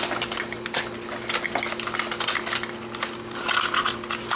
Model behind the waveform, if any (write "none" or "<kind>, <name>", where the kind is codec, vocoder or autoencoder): none